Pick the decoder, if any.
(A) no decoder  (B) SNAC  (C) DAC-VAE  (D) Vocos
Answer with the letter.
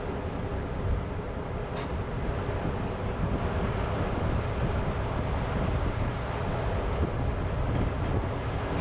A